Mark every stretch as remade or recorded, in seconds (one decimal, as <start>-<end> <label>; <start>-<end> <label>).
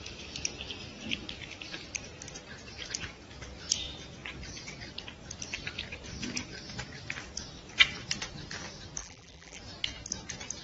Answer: 0.0-9.0 recorded; 9.0-9.6 remade; 9.6-10.6 recorded